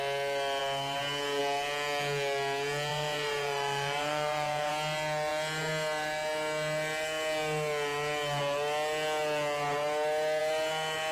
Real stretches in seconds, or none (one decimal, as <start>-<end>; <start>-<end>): 0.0-2.9; 4.7-11.1